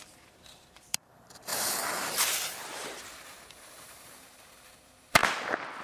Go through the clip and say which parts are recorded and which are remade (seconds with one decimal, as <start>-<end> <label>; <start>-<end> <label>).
0.0-5.2 remade; 5.2-5.8 recorded